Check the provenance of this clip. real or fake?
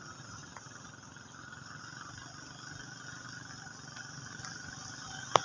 real